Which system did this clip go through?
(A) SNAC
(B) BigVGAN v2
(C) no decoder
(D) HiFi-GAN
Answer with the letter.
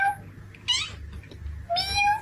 C